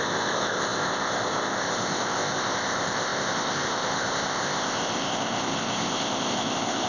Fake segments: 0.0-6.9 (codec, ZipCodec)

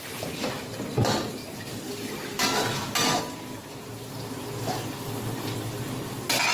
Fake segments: 3.6-4.1 (vocoder, BigVGAN v2)

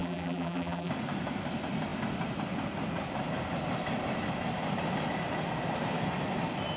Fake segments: 0.0-0.9 (vocoder, BigVGAN v2)

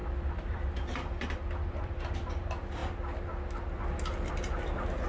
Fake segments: 0.0-2.1 (vocoder, BigVGAN v2)

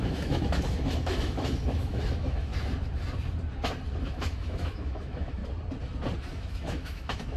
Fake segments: 0.0-2.5 (autoencoder, DAC-VAE); 4.0-5.4; 6.3-7.4

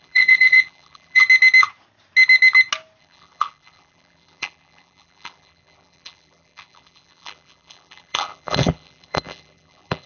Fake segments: 0.0-1.2 (vocoder, BigVGAN v2); 3.0-10.1